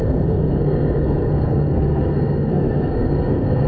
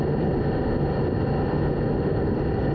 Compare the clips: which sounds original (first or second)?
second